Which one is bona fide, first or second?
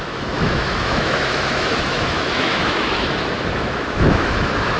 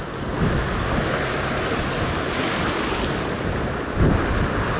second